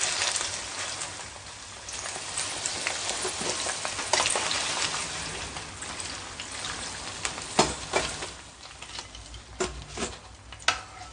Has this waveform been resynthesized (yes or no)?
no